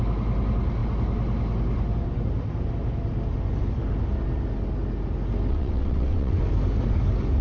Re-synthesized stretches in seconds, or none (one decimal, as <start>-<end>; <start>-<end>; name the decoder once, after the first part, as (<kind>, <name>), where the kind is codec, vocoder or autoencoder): 5.5-6.4 (vocoder, WaveNeXt)